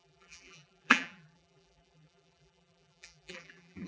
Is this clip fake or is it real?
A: fake